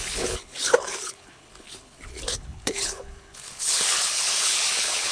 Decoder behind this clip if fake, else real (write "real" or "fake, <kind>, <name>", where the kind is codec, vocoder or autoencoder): fake, codec, HILCodec